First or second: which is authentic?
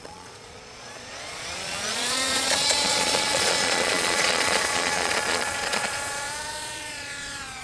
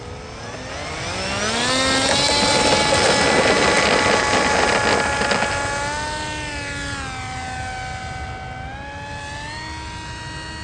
second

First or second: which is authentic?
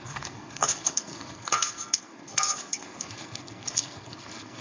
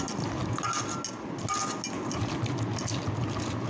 second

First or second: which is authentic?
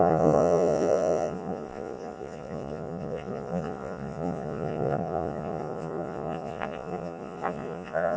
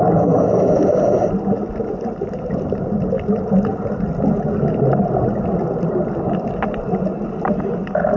second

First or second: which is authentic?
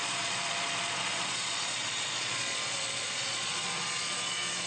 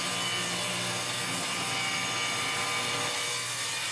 second